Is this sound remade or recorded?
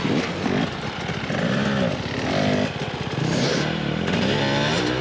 recorded